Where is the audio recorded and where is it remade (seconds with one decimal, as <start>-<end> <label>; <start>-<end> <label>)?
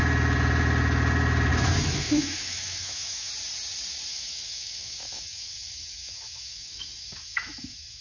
0.0-1.5 recorded; 1.5-3.3 remade; 3.3-4.1 recorded; 4.1-8.0 remade